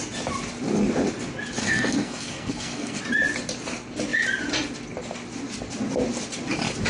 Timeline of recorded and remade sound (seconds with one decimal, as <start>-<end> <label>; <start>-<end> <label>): 0.0-1.6 recorded; 1.6-3.0 remade; 3.0-6.9 recorded